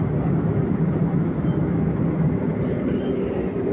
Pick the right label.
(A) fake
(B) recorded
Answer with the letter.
B